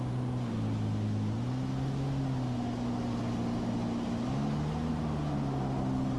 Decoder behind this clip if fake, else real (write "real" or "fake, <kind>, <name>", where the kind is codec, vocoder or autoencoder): real